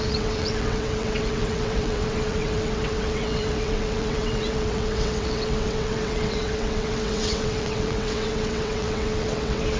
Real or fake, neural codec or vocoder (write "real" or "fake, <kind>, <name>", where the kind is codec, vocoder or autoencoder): fake, vocoder, WaveNeXt